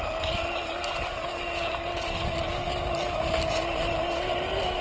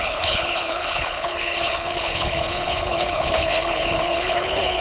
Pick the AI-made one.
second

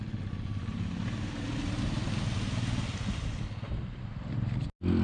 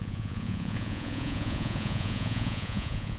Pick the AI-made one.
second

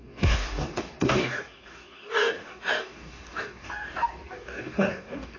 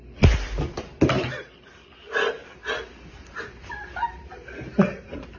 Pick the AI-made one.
first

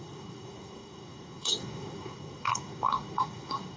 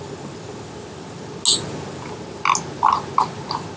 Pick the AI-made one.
first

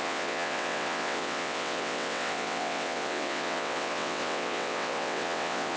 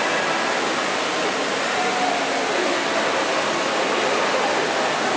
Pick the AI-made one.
first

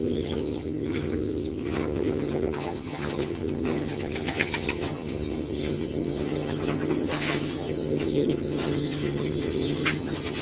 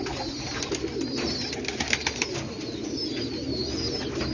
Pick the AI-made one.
first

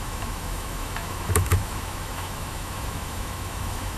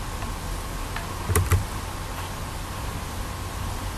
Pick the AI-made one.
first